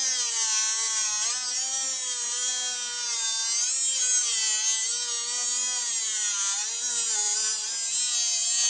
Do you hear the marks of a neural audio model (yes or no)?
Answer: no